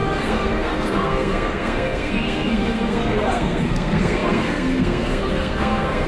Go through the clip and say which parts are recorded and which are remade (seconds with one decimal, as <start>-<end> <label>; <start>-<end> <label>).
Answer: 0.0-6.1 remade